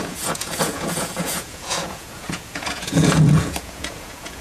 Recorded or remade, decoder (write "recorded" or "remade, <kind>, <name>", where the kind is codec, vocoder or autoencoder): remade, vocoder, Vocos